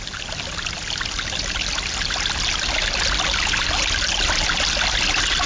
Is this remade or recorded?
recorded